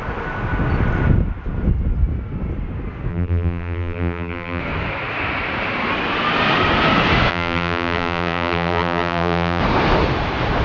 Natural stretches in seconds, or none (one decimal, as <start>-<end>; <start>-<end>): 0.0-3.1; 4.6-7.3; 9.6-10.6